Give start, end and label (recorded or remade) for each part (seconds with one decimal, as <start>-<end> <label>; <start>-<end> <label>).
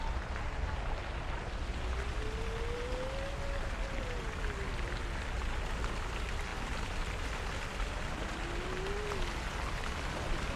0.0-10.6 recorded